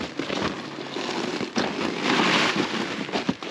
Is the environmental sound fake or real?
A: real